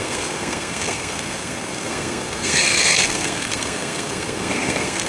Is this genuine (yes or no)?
no